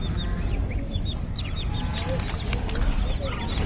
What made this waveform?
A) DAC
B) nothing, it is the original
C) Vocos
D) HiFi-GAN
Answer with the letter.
B